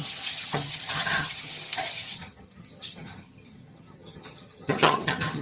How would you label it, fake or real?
fake